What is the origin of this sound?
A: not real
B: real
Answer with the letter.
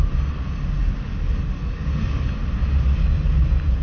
B